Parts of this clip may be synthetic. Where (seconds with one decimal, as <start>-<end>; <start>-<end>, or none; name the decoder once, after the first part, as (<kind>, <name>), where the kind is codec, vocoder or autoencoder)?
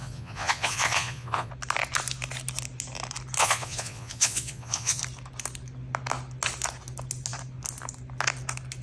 0.0-1.5 (vocoder, Vocos); 3.4-5.0